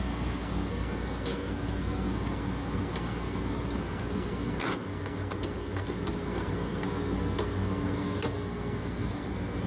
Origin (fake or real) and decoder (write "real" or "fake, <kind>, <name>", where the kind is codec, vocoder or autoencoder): fake, codec, SNAC